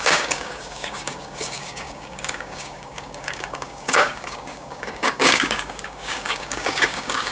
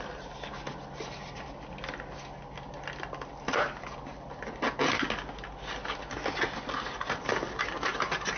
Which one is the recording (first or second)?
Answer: second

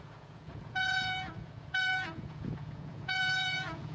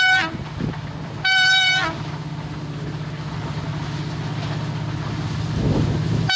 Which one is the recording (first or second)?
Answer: second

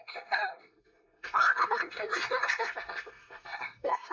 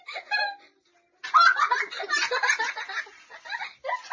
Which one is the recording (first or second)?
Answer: second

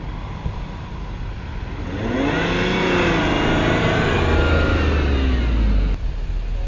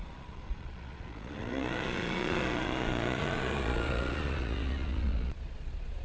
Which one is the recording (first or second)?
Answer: first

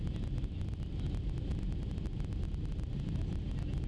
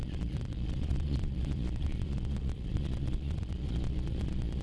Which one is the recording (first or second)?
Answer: first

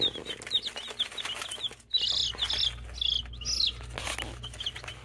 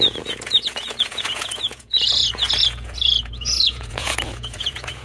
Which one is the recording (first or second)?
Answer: first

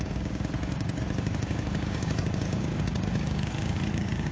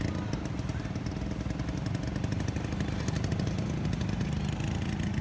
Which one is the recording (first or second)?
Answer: second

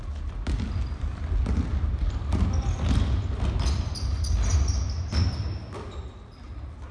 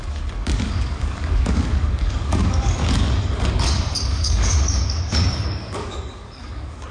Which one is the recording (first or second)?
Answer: first